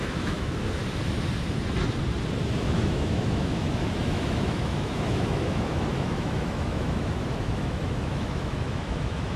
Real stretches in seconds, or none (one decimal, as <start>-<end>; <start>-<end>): 0.8-2.6